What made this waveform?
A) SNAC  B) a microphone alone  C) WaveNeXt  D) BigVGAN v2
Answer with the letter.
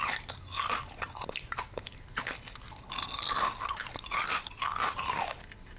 B